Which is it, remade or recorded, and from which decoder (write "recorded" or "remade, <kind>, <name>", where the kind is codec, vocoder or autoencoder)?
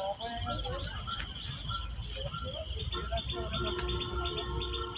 recorded